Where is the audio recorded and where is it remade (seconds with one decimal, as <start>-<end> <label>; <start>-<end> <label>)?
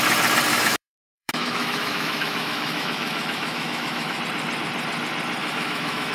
0.0-0.5 recorded; 0.5-4.2 remade; 4.2-5.4 recorded; 5.4-6.1 remade